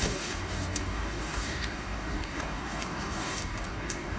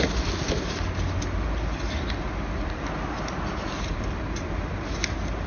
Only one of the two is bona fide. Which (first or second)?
second